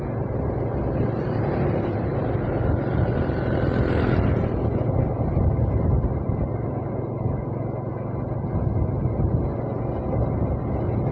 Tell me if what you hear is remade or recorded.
recorded